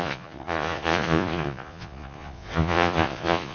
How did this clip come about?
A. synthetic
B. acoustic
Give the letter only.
A